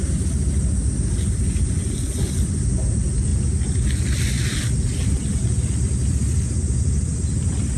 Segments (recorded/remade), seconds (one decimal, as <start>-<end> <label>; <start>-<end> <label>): 0.0-7.8 recorded